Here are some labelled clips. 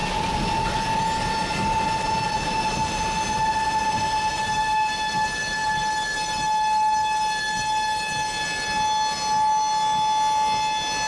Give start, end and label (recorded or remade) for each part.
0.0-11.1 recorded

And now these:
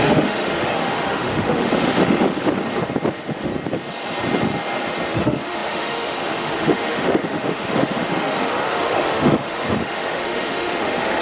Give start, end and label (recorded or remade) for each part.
0.0-2.4 remade; 2.4-3.1 recorded; 3.1-3.5 remade; 3.5-5.1 recorded; 5.1-11.2 remade

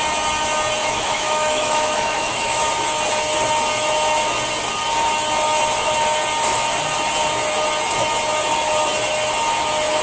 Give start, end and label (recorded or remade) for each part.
0.0-0.8 recorded; 0.8-2.7 remade; 2.7-10.0 recorded

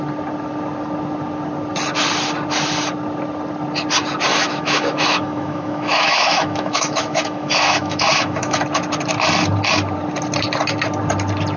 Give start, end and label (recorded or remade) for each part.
0.0-4.3 recorded; 4.3-8.6 remade; 8.6-11.6 recorded

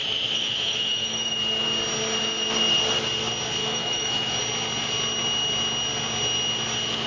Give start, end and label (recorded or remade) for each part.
0.0-1.4 remade; 1.4-3.6 recorded; 3.6-4.4 remade; 4.4-7.1 recorded